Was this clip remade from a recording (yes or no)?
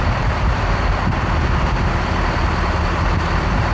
yes